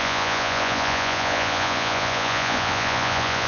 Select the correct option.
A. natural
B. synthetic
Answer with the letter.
B